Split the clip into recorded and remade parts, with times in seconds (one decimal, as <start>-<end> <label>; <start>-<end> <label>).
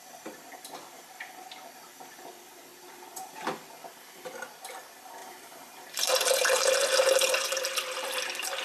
0.0-5.2 recorded; 5.2-6.1 remade; 6.1-8.6 recorded